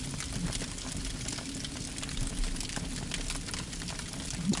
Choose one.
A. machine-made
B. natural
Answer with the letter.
B